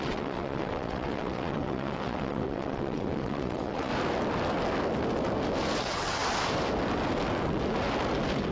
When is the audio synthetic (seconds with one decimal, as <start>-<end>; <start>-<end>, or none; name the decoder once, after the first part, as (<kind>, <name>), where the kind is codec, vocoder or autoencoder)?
0.0-3.9 (vocoder, WaveNeXt); 5.8-6.2